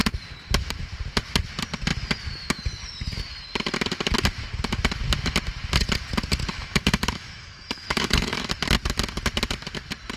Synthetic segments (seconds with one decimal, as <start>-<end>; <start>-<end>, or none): 6.5-8.5